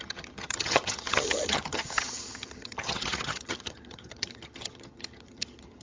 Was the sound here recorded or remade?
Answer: remade